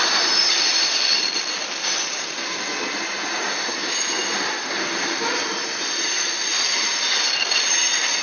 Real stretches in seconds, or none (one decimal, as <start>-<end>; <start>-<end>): 0.0-8.2